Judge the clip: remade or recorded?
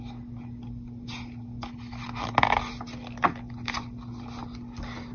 recorded